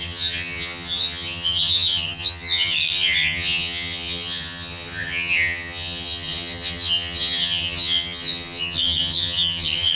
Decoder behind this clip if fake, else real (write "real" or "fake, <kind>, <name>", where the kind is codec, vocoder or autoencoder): fake, vocoder, HiFi-GAN